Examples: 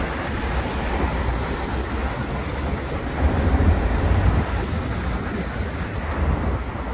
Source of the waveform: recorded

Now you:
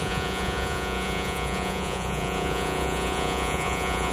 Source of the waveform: remade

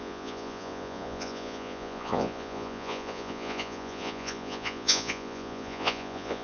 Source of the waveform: remade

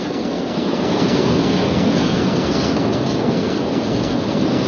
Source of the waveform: remade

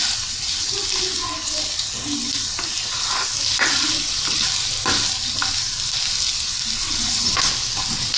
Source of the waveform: recorded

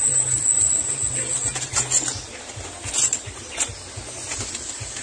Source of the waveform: recorded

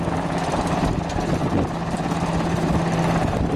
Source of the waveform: recorded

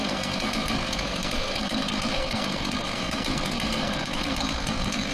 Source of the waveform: remade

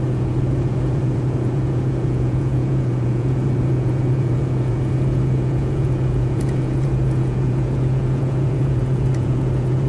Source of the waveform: remade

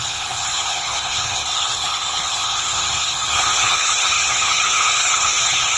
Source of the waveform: remade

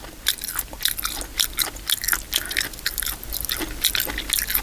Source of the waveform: recorded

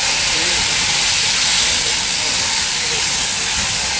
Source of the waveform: recorded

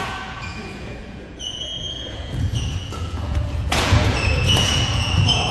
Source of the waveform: remade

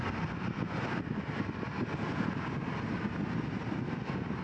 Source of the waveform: recorded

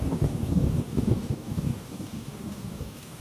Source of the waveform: remade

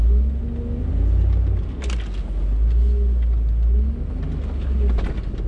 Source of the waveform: recorded